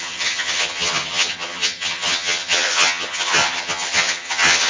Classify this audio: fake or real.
fake